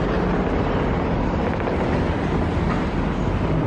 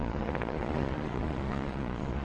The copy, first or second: second